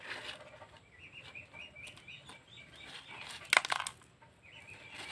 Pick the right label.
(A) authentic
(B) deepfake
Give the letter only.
A